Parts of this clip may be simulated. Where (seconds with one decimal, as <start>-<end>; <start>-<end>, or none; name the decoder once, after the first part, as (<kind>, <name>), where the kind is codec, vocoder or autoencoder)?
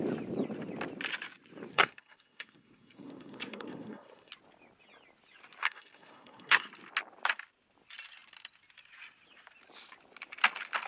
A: 1.7-4.3 (codec, SNAC); 5.6-6.7